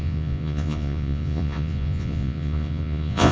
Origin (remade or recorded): remade